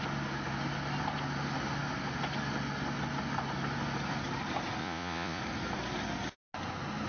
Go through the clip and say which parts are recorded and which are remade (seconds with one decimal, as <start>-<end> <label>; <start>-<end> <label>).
0.0-4.8 recorded; 4.8-5.4 remade; 5.4-7.1 recorded